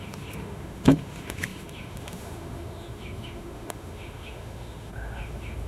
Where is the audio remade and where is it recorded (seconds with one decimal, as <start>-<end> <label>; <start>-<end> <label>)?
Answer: 0.0-5.7 remade